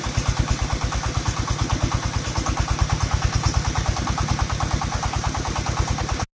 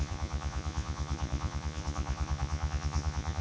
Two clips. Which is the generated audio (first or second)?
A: second